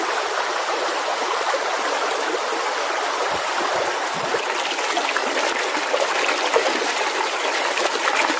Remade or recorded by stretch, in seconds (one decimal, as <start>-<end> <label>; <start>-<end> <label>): 0.0-8.4 recorded